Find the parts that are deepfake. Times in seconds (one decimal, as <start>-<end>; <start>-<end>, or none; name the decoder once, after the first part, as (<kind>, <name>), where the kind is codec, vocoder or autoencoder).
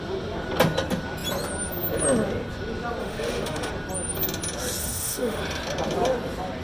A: 3.0-3.7 (autoencoder, DAC-VAE); 4.8-5.4